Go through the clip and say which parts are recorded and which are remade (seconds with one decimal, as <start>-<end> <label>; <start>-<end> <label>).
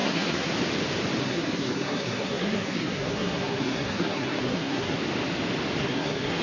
0.0-0.5 remade; 0.5-1.2 recorded; 1.2-5.0 remade; 5.0-5.8 recorded; 5.8-6.4 remade